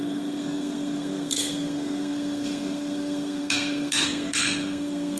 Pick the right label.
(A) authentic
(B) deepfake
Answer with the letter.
B